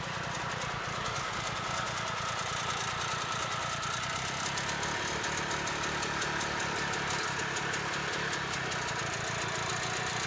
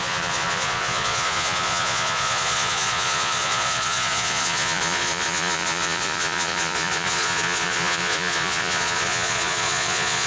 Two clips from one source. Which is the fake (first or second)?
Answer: second